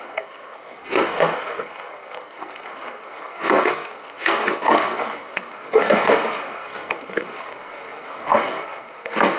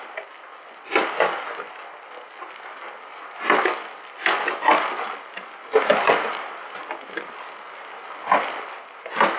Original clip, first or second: second